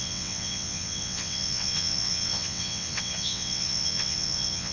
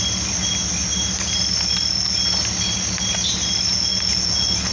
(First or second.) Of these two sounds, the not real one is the first